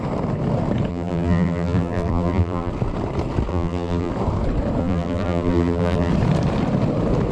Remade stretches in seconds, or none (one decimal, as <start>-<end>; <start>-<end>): 0.9-2.7; 3.5-4.1; 4.8-6.1